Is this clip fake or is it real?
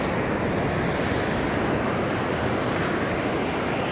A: real